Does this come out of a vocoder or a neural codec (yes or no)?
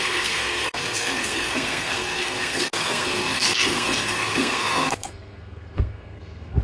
yes